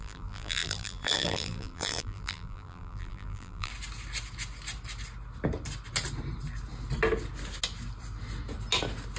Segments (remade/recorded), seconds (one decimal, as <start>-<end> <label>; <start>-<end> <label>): 0.0-3.7 remade; 3.7-9.2 recorded